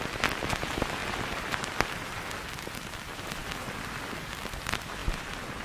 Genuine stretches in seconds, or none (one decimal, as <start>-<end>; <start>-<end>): 0.0-5.0